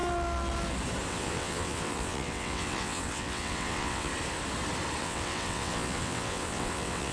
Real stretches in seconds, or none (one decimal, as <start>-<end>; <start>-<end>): 0.0-1.1; 4.1-5.0

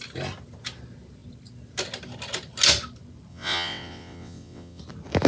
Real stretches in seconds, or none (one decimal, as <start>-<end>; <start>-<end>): 0.0-3.3; 4.8-5.3

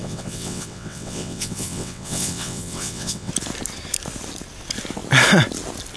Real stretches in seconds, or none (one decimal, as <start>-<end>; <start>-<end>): 3.3-6.0